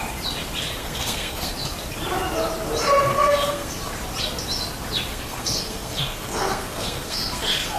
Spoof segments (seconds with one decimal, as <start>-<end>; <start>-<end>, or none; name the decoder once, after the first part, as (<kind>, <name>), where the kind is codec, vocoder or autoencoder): 0.8-1.5 (codec, SNAC); 3.1-3.7; 5.1-7.8